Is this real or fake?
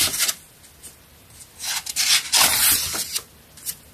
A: real